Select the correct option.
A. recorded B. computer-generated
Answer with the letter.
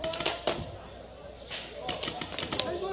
A